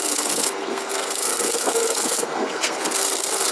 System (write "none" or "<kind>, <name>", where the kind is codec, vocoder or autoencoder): codec, SNAC